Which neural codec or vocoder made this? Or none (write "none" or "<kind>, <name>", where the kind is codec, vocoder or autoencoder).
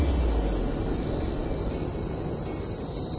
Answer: none